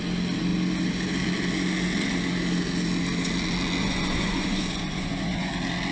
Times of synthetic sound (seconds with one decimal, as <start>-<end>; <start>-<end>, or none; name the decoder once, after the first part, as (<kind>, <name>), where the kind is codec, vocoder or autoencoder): 3.8-5.5 (vocoder, Vocos)